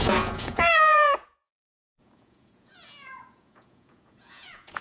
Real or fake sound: fake